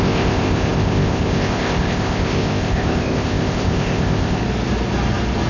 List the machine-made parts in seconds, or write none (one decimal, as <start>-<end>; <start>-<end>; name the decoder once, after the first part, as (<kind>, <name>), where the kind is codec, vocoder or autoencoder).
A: 0.0-4.4 (codec, ZipCodec)